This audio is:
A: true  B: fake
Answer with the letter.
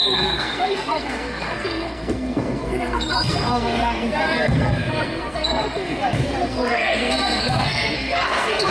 B